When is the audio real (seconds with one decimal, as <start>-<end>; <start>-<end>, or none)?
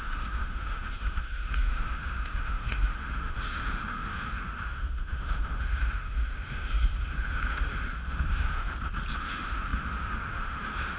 8.7-9.2